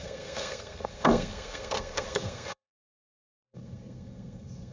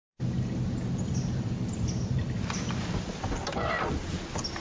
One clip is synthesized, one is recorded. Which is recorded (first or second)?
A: second